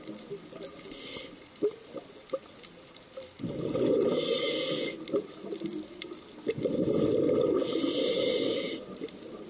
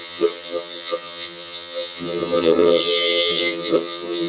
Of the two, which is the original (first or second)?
first